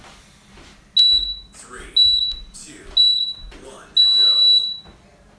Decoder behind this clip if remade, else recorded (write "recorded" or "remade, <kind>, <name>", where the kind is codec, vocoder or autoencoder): recorded